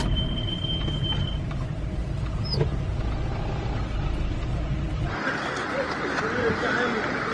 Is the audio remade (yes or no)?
no